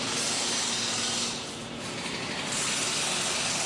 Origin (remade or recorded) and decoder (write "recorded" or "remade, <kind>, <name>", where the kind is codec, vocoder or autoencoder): recorded